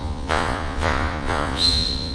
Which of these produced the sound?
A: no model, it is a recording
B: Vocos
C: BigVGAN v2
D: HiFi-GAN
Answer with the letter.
B